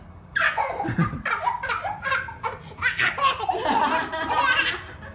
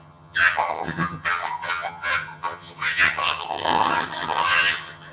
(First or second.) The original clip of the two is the first